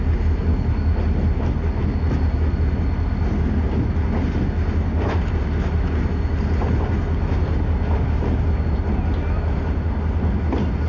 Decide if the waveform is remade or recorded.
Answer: recorded